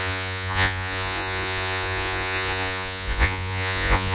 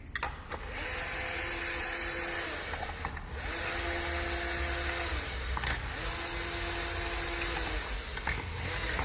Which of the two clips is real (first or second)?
second